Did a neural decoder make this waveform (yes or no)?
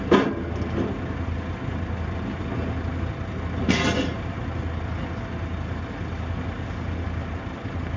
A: no